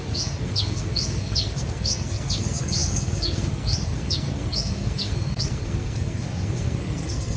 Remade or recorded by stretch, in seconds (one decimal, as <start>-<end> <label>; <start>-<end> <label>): 0.0-7.4 remade